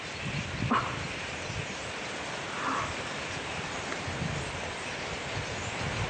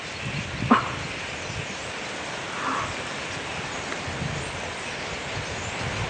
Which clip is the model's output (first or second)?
first